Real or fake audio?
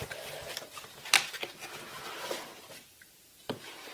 real